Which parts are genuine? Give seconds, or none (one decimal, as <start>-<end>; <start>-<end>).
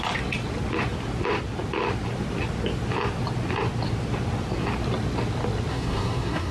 0.0-5.7